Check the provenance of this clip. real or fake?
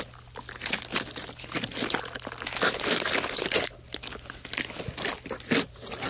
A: real